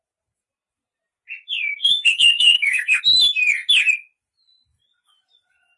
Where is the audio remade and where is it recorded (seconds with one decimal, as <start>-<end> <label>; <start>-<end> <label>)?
0.0-1.8 recorded; 1.8-3.0 remade; 3.0-5.8 recorded